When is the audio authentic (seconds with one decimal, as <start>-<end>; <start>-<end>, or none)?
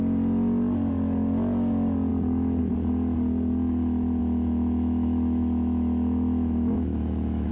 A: 0.0-4.2